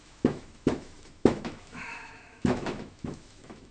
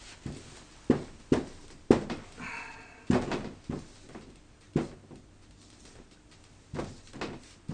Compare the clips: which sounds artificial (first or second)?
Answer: first